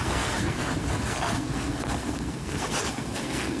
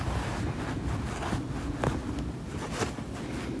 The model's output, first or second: first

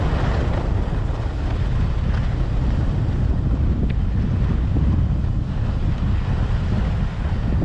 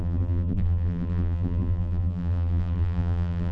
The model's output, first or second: second